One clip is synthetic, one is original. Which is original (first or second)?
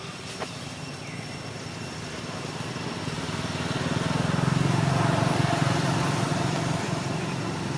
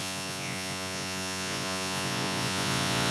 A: first